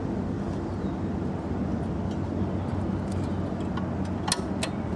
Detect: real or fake real